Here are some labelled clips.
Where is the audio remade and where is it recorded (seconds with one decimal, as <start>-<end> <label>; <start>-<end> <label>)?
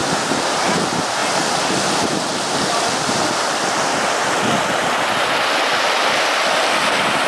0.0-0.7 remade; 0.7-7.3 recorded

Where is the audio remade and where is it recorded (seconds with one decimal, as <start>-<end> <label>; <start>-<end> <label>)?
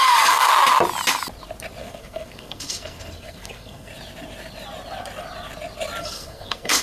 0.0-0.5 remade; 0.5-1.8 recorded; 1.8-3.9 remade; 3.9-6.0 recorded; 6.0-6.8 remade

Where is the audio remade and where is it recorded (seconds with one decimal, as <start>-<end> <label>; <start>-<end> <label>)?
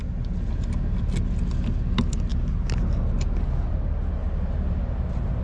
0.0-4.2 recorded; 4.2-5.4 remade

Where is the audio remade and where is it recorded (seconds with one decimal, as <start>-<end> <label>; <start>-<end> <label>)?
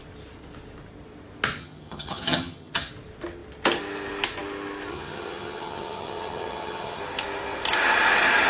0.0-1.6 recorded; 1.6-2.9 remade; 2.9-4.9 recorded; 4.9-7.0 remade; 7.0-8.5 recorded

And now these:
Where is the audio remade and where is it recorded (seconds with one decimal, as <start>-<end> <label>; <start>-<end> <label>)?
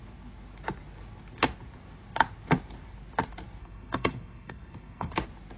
0.0-3.6 recorded; 3.6-5.1 remade; 5.1-5.6 recorded